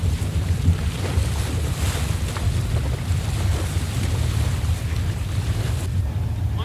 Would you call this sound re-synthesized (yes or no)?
no